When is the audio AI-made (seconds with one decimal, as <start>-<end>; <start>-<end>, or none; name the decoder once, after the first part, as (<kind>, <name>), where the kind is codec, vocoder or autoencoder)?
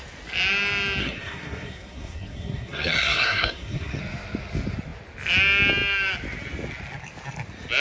1.0-4.0 (codec, SNAC)